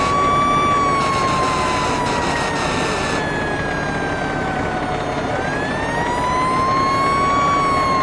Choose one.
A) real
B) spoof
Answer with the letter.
A